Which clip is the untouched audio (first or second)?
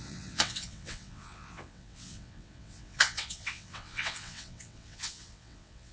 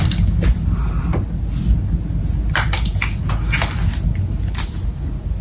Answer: second